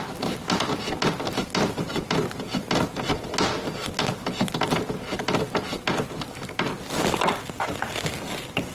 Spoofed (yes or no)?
no